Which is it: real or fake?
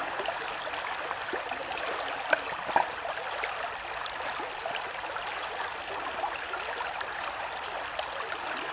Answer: real